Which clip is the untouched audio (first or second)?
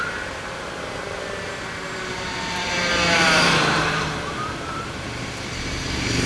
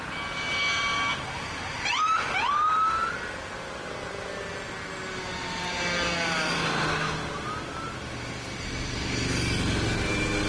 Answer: second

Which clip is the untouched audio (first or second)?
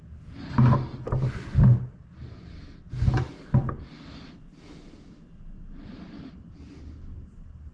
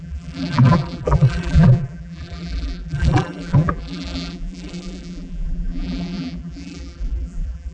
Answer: first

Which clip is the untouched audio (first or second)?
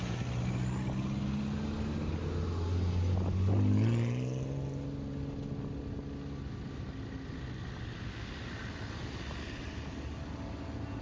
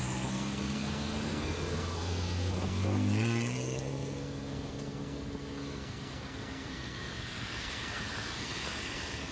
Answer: first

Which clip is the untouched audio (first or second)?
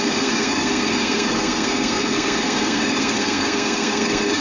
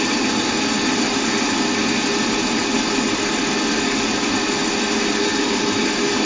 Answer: second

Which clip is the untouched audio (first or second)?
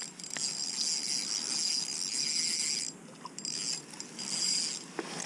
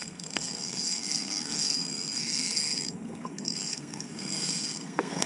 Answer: first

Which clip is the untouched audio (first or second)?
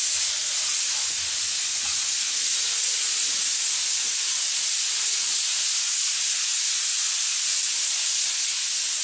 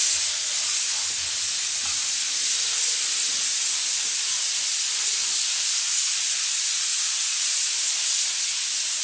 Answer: second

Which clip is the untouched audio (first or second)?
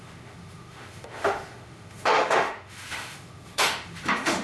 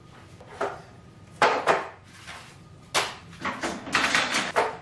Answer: second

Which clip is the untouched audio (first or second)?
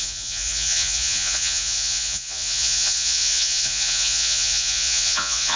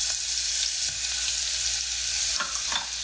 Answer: second